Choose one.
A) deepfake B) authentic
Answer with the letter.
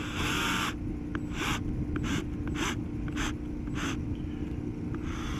B